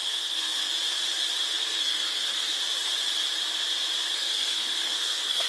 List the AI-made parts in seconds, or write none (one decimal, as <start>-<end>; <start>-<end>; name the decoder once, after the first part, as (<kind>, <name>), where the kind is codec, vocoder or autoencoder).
0.0-0.7 (codec, SNAC); 1.6-2.6; 4.0-5.5